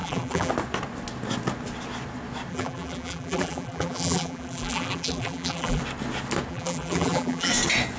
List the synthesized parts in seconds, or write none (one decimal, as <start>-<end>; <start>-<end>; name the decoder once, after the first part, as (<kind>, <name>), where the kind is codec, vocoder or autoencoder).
0.0-0.5 (vocoder, BigVGAN v2); 2.5-5.8; 6.5-7.5